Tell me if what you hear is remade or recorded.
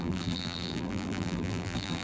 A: remade